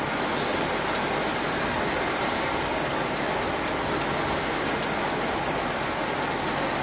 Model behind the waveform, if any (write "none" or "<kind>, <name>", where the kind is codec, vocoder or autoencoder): none